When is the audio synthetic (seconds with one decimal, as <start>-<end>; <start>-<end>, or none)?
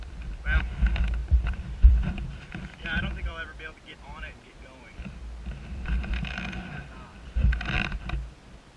1.2-5.2